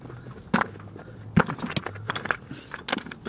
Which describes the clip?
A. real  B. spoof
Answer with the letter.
A